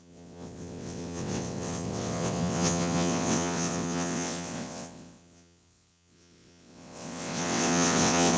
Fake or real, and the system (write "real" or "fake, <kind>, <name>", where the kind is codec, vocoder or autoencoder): fake, vocoder, WaveNeXt